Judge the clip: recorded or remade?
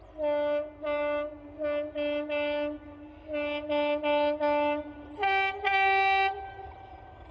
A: recorded